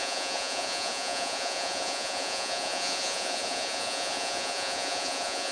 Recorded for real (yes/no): no